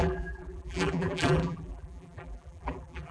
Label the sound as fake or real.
fake